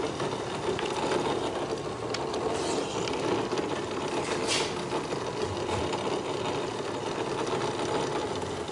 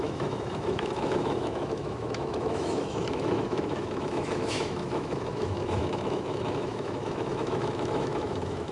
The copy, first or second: second